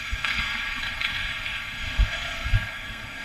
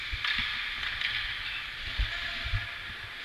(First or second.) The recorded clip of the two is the second